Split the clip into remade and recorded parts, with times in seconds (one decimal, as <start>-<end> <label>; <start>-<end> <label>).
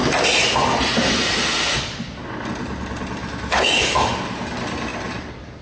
0.0-3.2 recorded; 3.2-4.1 remade; 4.1-5.6 recorded